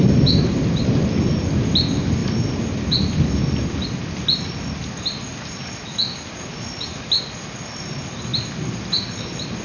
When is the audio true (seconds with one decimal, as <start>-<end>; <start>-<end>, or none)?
0.0-9.6